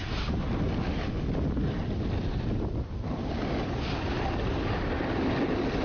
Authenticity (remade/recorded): recorded